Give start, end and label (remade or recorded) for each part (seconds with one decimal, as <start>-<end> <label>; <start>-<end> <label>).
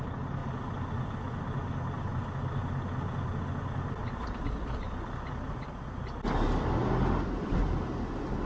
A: 0.0-0.4 recorded; 0.4-1.1 remade; 1.1-8.5 recorded